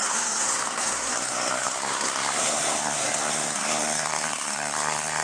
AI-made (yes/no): yes